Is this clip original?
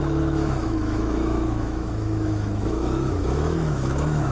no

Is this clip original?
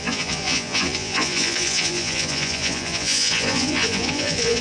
no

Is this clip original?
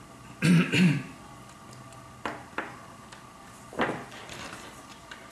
yes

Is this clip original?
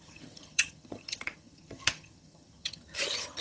no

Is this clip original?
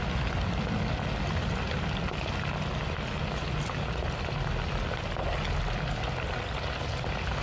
yes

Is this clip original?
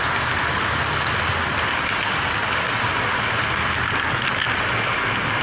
yes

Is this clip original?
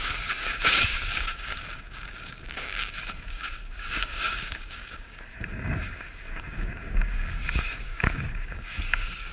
no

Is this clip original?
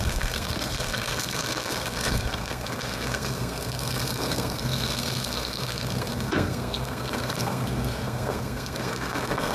no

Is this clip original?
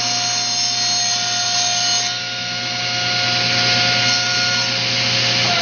yes